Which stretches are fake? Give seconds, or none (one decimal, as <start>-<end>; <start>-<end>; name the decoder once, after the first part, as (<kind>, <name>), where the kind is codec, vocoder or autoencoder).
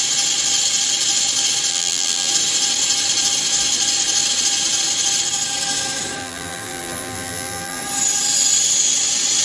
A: 1.7-2.3 (vocoder, BigVGAN v2); 6.2-7.8